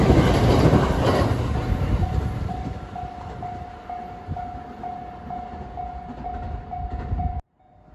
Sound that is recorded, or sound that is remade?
recorded